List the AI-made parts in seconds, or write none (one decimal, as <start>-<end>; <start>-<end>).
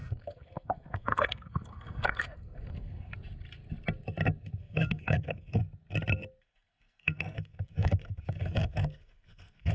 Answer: 0.0-3.1; 4.6-5.6; 6.4-9.7